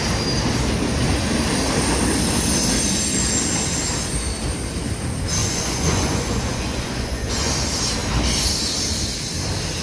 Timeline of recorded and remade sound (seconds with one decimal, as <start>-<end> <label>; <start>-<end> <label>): 0.0-5.4 recorded; 5.4-7.5 remade; 7.5-9.8 recorded